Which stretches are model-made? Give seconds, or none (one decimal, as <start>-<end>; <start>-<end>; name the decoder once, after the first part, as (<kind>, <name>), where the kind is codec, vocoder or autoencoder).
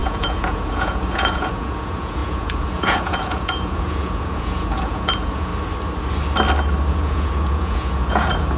0.0-5.5 (vocoder, Vocos); 6.9-8.6